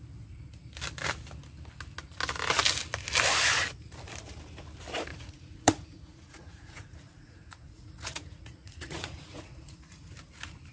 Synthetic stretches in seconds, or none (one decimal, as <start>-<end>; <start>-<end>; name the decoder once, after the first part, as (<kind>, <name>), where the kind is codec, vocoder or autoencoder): 5.1-10.1 (vocoder, Vocos)